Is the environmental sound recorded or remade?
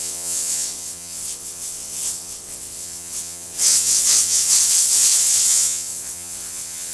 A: remade